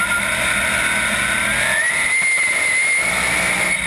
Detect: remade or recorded recorded